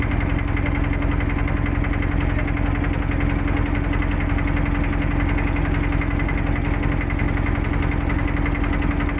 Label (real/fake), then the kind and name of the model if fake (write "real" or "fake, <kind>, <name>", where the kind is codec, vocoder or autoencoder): real